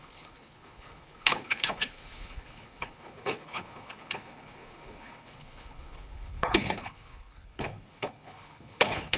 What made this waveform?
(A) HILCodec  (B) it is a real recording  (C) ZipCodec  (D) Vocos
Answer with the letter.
A